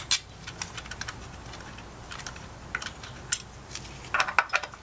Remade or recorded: recorded